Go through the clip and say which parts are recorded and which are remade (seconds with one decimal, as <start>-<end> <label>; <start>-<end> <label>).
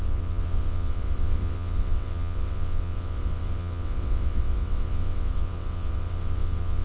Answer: 0.0-6.8 remade